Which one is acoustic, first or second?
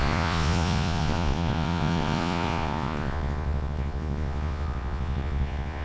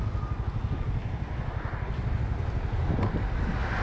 second